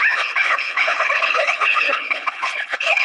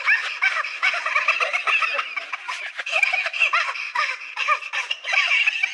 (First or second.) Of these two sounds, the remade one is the first